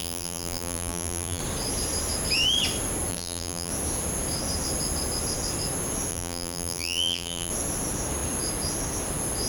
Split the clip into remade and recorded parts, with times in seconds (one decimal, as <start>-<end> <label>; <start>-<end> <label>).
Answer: 0.0-1.4 remade; 1.4-3.1 recorded; 3.1-3.7 remade; 3.7-6.1 recorded; 6.1-7.5 remade; 7.5-9.5 recorded